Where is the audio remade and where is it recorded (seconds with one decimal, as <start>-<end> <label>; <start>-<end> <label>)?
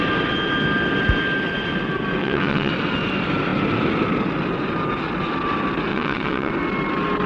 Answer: 0.0-2.2 recorded; 2.2-2.7 remade; 2.7-5.9 recorded; 5.9-6.5 remade; 6.5-7.3 recorded